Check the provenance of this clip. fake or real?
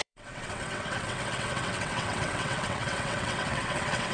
fake